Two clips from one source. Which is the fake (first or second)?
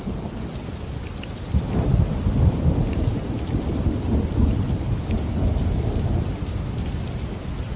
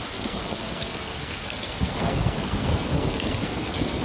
second